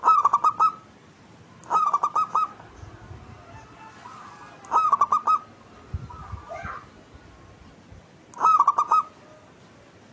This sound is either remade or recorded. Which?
recorded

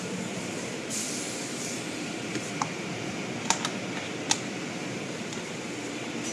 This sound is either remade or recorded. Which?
remade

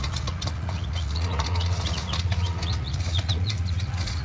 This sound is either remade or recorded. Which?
remade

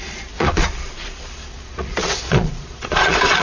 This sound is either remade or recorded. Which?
remade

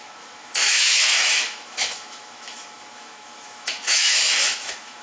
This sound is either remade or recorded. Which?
remade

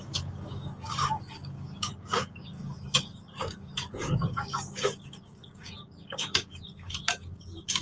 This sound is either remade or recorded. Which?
remade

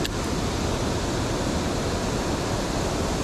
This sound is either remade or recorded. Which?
recorded